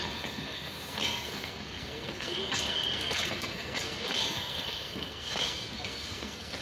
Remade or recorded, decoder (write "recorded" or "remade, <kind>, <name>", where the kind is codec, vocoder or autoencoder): remade, codec, SNAC